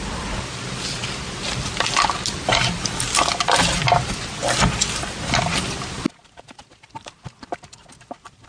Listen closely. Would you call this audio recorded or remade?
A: recorded